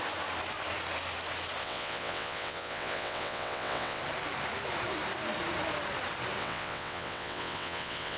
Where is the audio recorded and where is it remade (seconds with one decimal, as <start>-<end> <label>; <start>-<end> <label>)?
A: 0.0-1.6 recorded; 1.6-4.0 remade; 4.0-6.4 recorded; 6.4-8.2 remade